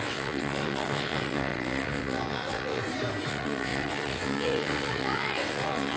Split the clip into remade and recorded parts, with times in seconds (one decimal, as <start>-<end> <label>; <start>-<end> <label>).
0.0-2.8 remade; 2.8-3.3 recorded; 3.3-6.0 remade